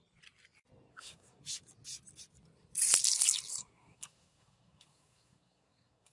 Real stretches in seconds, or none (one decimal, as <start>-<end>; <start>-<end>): 0.0-0.9; 1.4-3.5